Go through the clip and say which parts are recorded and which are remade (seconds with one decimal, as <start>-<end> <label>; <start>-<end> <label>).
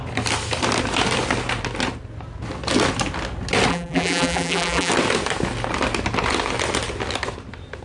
0.0-3.7 recorded; 3.7-4.9 remade; 4.9-7.8 recorded